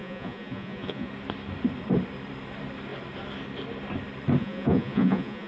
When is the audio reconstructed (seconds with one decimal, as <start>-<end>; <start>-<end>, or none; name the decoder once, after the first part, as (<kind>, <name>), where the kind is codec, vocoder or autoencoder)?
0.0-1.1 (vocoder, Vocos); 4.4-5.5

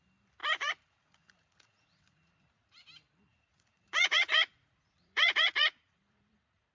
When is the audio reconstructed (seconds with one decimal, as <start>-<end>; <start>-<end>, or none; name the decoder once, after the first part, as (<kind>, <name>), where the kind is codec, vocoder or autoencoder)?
0.4-2.8 (vocoder, Vocos); 3.3-6.7

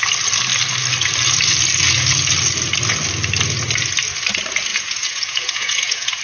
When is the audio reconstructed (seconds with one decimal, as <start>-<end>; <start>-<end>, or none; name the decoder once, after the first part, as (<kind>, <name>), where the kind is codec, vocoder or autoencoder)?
4.7-6.2 (vocoder, Vocos)